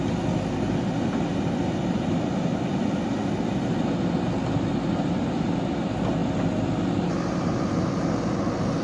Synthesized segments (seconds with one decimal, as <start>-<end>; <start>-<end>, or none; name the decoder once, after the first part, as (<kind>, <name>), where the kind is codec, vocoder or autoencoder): none